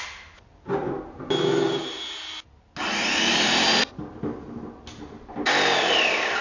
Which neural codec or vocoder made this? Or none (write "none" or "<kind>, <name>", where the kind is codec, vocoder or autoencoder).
none